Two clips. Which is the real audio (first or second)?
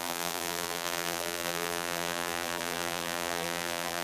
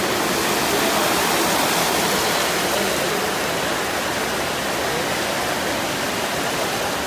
second